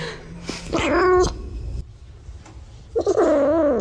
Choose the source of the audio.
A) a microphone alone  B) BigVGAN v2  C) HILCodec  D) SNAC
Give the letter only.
A